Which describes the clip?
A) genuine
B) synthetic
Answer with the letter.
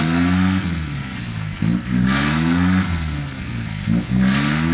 B